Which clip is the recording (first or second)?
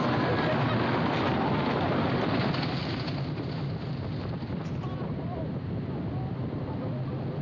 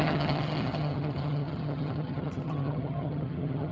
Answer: first